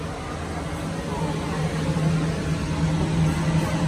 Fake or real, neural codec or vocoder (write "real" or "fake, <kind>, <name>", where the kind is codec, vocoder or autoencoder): real